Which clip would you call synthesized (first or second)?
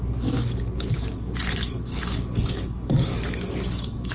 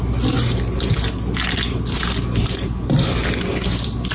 first